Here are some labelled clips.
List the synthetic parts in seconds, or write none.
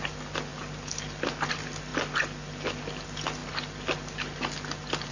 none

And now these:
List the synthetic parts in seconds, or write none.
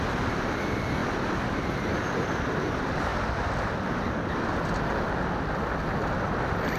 none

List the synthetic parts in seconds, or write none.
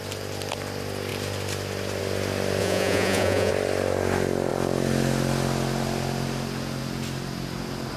2.6-3.5 (vocoder, Vocos)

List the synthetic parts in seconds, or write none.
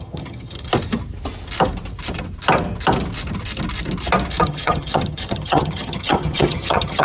0.0-0.7 (vocoder, HiFi-GAN); 4.4-7.0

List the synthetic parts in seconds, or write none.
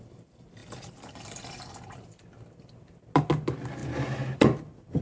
0.6-1.5 (vocoder, BigVGAN v2)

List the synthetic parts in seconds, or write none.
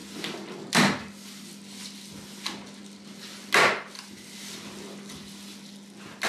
none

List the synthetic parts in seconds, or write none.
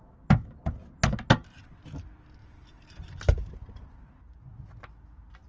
2.4-3.5 (vocoder, BigVGAN v2)